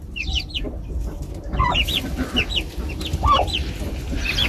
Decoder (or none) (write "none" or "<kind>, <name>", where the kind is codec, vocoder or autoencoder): vocoder, BigVGAN v2